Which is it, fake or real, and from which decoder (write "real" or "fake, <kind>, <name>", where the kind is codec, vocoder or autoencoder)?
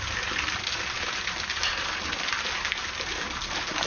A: real